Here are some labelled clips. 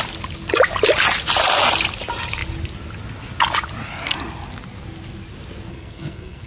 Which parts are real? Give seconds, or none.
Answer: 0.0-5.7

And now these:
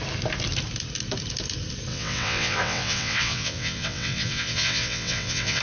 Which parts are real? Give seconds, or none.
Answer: 0.0-1.9

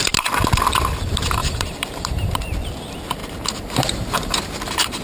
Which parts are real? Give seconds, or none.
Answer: 0.0-1.4; 2.4-3.2